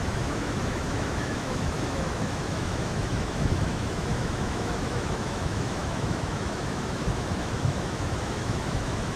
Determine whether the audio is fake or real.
fake